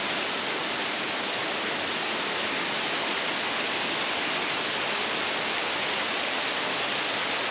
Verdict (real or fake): real